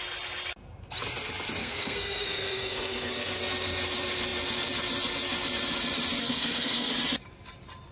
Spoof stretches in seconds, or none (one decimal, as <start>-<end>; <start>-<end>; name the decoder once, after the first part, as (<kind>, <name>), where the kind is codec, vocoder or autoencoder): 1.6-3.4 (codec, SNAC); 6.2-6.9